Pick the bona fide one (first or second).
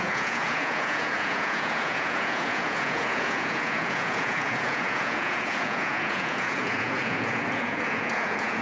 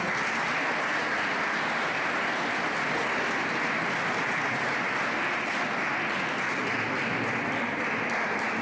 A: second